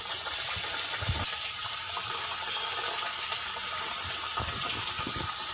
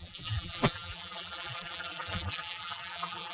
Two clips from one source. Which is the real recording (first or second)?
first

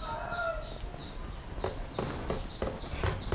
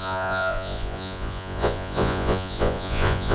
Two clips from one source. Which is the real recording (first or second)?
first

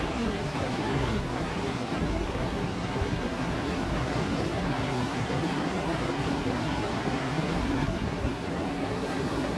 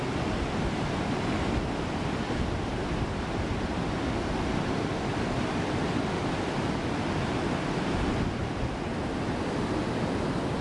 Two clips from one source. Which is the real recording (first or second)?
second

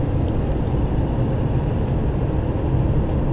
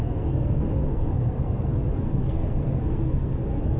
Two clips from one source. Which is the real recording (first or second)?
first